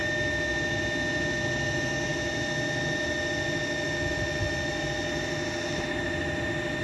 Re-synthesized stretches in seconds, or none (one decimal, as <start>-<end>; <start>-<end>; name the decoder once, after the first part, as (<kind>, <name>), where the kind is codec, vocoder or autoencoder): none